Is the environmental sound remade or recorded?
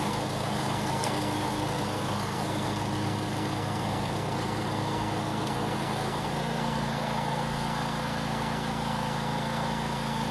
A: remade